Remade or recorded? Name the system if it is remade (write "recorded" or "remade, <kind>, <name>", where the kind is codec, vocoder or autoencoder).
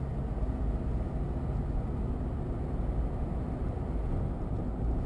recorded